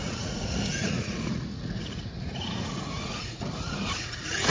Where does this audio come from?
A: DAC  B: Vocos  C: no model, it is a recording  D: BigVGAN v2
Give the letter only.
B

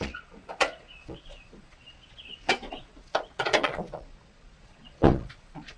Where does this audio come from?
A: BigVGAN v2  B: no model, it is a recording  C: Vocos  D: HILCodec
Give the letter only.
C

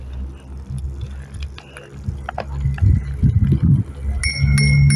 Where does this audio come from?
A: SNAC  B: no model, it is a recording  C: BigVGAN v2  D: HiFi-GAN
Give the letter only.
B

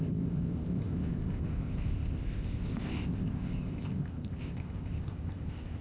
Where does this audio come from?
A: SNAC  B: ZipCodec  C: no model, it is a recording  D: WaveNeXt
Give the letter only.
B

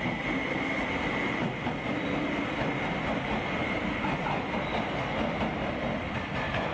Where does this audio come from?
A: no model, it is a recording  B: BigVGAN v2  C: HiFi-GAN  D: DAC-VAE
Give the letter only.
A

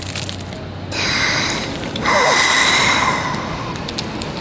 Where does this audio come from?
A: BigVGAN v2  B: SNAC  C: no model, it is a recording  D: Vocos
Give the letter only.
A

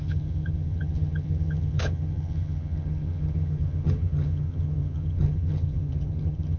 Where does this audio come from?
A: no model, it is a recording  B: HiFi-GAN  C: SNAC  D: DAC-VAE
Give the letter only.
B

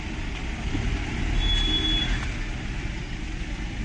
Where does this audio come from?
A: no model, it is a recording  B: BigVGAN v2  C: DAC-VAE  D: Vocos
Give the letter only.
A